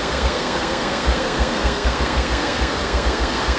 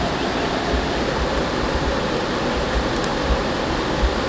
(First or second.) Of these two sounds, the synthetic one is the first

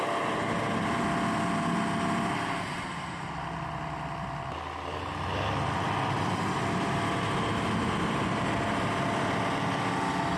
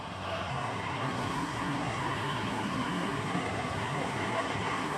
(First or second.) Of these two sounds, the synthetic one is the second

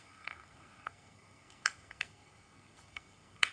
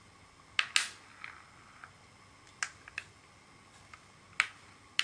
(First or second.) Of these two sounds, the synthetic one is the first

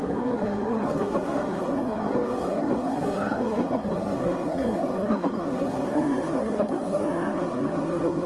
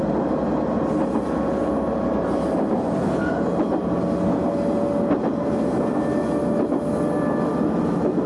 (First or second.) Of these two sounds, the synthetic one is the first